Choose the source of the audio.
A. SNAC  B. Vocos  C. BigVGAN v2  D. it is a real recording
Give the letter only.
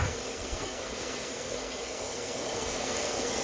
A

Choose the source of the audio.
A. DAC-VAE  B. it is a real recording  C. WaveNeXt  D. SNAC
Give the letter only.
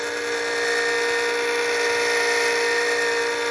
B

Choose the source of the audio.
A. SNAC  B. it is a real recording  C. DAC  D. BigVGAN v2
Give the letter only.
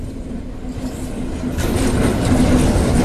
B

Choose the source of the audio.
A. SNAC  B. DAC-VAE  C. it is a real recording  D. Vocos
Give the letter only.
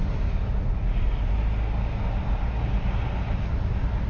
C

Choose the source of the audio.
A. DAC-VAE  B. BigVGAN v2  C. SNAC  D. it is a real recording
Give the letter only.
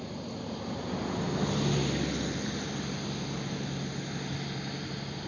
D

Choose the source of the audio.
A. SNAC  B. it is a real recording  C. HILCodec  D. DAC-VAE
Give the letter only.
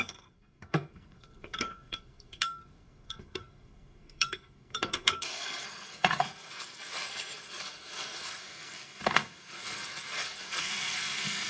A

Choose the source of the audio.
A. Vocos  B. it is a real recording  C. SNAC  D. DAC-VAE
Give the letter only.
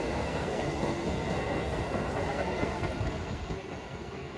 C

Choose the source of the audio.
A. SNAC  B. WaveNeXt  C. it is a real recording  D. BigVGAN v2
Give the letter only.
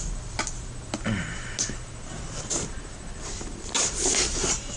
C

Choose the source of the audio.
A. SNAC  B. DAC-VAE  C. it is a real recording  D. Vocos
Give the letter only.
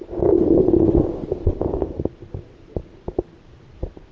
C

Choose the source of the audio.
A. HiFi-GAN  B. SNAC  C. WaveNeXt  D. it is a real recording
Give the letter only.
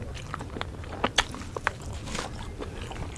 D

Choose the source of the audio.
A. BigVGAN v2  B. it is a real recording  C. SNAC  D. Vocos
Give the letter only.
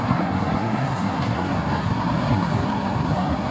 C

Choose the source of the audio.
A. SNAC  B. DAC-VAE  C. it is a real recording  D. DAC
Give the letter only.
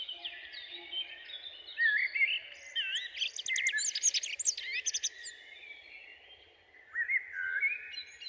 C